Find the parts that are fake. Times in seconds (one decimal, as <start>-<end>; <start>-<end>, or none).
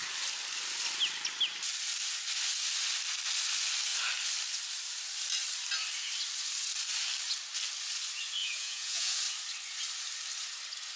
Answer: 8.4-9.2